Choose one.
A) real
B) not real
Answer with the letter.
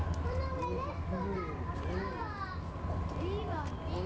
A